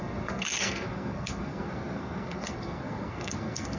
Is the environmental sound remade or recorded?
remade